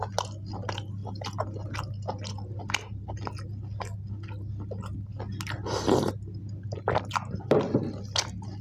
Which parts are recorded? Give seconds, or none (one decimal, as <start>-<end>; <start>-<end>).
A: 0.0-8.6